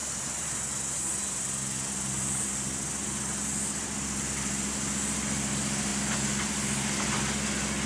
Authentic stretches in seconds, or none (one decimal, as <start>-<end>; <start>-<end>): 0.0-7.9